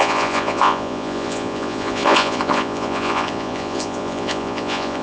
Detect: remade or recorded remade